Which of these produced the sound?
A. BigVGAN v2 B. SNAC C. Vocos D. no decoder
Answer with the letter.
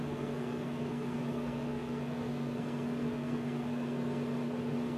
B